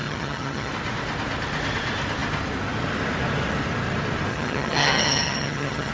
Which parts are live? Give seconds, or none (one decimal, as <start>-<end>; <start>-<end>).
0.7-4.3